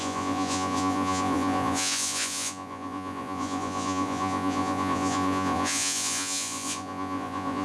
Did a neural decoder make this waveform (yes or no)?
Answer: yes